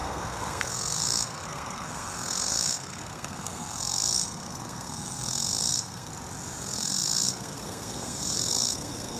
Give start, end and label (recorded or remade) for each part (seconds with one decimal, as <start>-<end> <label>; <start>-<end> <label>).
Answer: 0.0-6.1 remade; 6.1-6.6 recorded; 6.6-9.2 remade